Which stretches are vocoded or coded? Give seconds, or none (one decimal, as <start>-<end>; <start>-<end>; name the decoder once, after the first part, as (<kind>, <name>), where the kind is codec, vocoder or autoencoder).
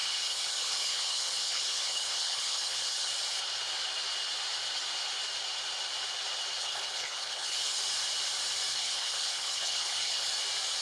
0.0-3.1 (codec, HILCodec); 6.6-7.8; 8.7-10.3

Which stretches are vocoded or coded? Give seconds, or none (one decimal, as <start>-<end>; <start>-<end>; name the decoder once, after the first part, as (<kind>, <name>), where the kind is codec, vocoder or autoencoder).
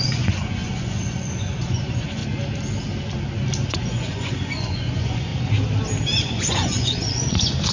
0.0-2.2 (vocoder, Vocos); 3.7-5.3; 6.2-7.7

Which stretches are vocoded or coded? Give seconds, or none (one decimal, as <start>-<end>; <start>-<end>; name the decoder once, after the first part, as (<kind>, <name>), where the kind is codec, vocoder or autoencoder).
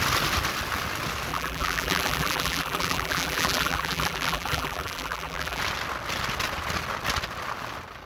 1.3-5.6 (vocoder, BigVGAN v2)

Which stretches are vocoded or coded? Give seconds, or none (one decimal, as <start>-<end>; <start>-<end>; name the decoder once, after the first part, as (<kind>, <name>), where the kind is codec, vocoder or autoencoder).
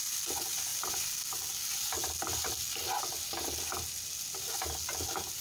none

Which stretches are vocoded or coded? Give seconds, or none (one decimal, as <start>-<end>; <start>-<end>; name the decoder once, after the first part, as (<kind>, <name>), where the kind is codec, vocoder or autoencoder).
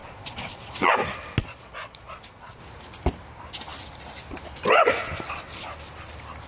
0.0-0.9 (vocoder, Vocos); 1.4-2.6